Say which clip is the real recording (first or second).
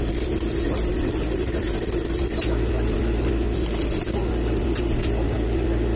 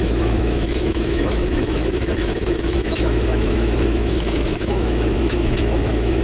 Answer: first